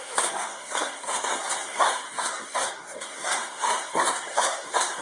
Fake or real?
fake